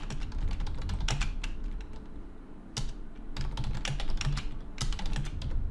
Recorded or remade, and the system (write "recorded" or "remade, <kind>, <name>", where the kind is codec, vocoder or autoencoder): recorded